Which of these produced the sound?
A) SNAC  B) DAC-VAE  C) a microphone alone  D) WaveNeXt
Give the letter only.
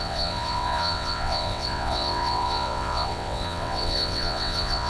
D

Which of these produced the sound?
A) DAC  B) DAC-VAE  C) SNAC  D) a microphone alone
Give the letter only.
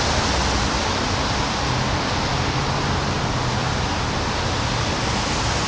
D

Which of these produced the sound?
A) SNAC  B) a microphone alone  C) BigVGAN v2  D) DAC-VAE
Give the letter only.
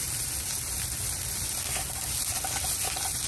B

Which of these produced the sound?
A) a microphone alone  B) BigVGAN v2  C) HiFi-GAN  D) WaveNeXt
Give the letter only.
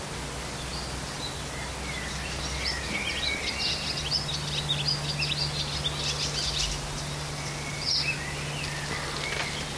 A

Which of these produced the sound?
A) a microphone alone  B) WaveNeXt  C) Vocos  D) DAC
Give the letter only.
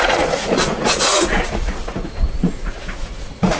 C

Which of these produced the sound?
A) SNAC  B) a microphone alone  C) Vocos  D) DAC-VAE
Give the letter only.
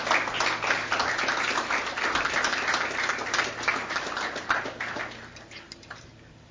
B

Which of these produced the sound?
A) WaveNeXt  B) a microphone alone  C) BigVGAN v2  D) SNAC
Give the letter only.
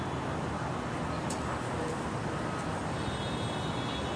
B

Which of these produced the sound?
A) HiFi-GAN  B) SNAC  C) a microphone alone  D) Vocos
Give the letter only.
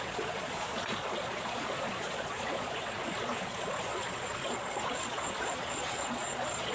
D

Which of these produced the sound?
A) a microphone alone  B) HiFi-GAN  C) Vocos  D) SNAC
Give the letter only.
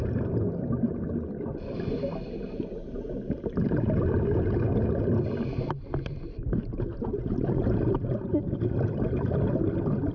A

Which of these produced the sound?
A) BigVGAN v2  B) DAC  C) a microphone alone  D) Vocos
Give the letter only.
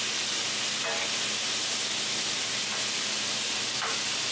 C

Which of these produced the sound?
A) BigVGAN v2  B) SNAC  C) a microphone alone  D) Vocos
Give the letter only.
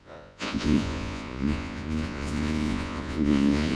D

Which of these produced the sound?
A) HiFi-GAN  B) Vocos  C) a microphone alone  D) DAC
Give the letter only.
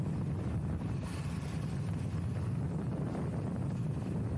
C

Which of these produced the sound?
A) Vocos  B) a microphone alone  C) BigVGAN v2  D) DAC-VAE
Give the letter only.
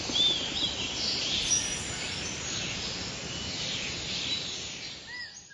B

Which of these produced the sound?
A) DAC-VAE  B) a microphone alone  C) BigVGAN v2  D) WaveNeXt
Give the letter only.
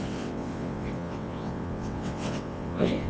D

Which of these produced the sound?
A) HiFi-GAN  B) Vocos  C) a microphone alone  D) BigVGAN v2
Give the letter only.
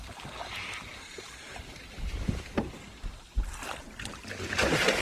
C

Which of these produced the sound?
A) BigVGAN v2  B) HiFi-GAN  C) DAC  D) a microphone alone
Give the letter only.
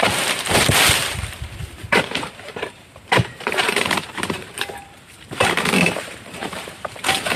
A